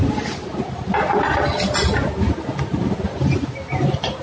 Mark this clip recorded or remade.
recorded